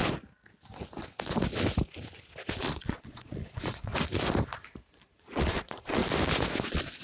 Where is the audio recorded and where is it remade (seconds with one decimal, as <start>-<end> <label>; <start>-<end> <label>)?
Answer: 0.0-2.5 recorded; 2.5-3.9 remade; 3.9-5.1 recorded; 5.1-6.0 remade; 6.0-6.6 recorded; 6.6-7.0 remade